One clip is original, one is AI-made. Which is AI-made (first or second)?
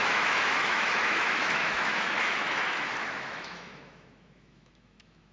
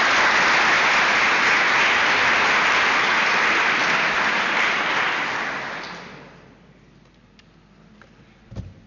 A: first